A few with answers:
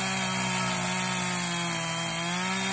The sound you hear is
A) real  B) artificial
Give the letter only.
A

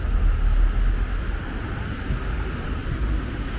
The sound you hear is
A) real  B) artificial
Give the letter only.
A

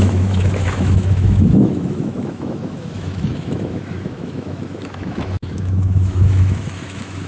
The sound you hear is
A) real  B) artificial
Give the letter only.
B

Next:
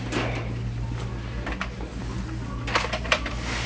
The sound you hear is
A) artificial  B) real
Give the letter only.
B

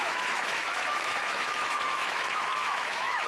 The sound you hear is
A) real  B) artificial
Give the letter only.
B